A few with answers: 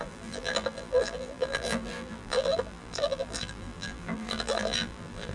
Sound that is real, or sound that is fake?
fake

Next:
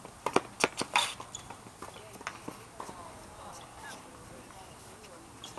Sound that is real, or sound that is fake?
real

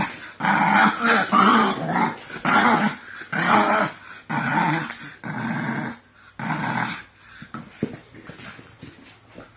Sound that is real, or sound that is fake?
real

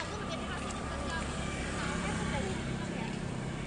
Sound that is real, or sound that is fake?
fake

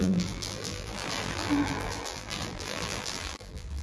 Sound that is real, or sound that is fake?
fake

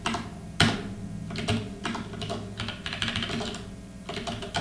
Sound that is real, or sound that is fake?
real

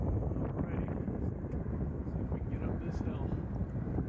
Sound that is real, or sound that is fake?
fake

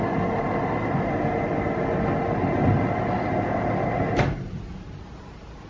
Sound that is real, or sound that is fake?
real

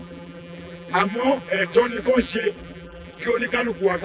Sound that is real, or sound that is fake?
fake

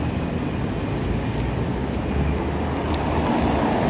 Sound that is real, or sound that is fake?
real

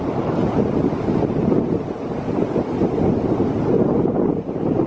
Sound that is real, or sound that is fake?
real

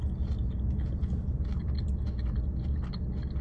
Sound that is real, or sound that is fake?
real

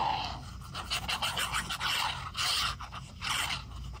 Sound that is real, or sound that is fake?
real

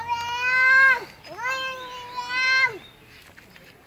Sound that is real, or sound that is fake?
real